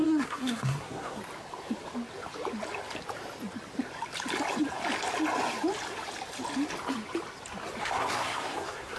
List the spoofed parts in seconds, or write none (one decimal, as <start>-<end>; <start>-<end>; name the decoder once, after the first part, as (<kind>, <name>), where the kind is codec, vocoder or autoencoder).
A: 0.0-1.2 (codec, SNAC); 7.8-9.0